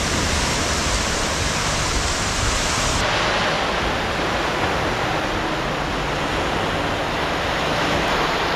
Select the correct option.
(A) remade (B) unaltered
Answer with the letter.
B